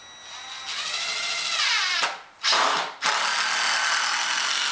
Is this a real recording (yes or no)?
yes